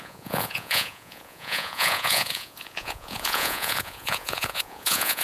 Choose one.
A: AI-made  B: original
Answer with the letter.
A